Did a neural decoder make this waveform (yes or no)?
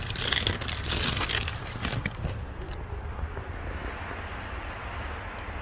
no